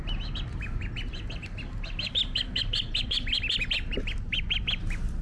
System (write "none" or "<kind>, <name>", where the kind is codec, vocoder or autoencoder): none